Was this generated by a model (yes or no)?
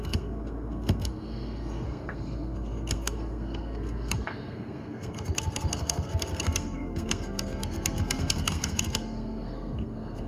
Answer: yes